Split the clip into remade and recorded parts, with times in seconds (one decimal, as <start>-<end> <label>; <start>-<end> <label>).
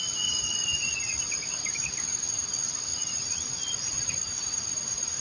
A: 0.0-5.2 recorded